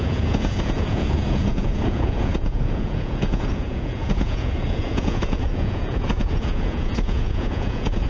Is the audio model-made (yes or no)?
yes